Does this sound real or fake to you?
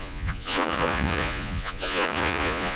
fake